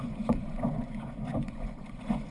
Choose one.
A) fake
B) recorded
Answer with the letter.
A